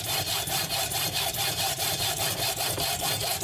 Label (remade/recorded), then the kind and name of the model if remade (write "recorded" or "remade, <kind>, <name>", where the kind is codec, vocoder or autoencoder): remade, vocoder, BigVGAN v2